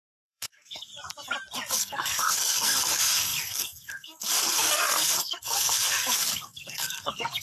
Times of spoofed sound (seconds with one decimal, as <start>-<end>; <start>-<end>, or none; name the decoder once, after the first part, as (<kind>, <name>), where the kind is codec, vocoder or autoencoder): 0.0-0.9 (codec, SNAC); 1.7-7.4